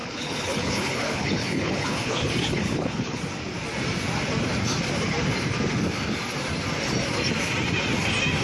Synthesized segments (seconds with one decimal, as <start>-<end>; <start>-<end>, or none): 0.0-3.2